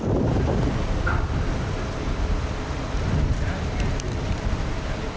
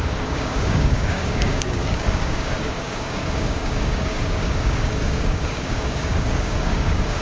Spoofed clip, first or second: second